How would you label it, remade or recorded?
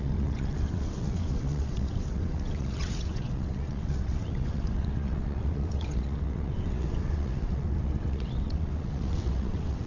remade